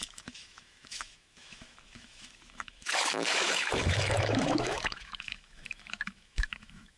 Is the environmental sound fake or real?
fake